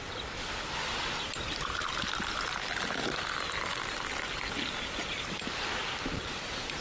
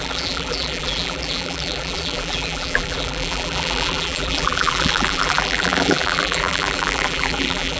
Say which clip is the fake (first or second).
second